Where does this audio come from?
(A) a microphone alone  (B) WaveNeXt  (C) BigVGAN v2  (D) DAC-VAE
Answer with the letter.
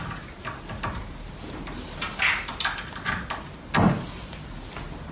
A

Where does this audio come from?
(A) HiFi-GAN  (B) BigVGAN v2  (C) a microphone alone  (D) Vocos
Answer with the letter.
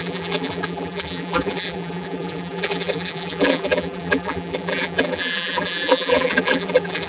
B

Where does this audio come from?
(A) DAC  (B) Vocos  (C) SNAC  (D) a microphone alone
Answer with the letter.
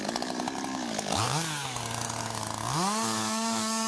A